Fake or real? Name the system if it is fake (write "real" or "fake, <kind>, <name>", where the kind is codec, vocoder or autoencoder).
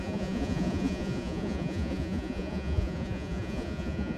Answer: fake, vocoder, Vocos